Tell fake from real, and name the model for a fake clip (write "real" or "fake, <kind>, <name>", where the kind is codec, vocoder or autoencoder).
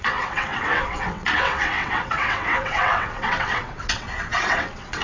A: fake, vocoder, WaveNeXt